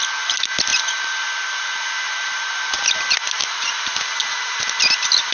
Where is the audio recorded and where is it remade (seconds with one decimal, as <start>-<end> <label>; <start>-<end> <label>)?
0.0-0.7 recorded; 0.7-3.0 remade; 3.0-3.4 recorded; 3.4-4.6 remade; 4.6-5.3 recorded